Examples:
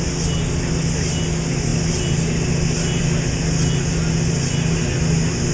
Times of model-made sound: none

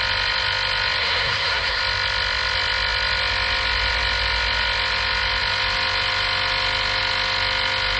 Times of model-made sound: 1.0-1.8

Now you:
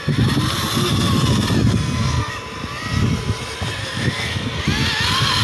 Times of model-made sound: 1.7-2.3; 3.8-4.6